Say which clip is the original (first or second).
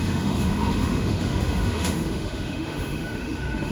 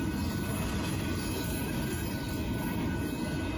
second